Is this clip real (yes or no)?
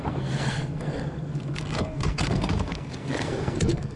no